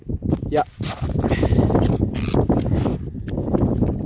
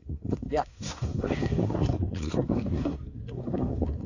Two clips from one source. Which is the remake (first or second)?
second